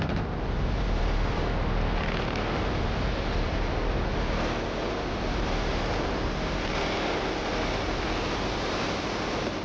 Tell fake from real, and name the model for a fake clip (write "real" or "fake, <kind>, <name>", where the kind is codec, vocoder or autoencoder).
real